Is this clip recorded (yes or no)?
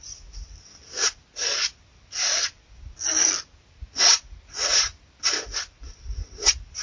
yes